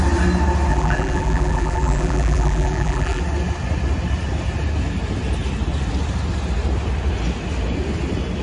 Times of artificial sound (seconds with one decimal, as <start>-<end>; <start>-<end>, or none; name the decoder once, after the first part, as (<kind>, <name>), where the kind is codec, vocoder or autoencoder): 0.7-3.2 (vocoder, BigVGAN v2)